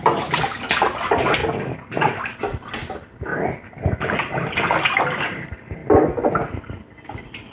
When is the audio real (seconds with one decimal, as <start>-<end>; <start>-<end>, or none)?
0.0-7.5

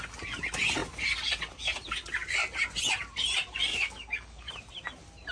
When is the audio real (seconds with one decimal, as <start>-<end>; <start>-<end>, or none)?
0.0-3.7; 4.5-5.3

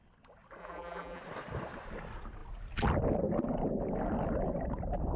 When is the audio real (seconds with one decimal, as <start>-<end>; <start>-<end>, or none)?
0.0-0.6; 1.2-5.2

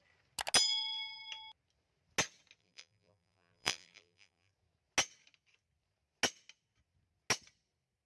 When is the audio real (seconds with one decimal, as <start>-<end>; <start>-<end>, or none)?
0.0-2.6; 4.5-8.0